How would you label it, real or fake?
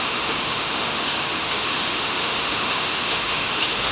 fake